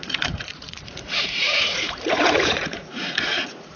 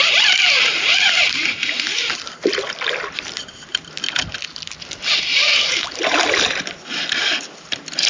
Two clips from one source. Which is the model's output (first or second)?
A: first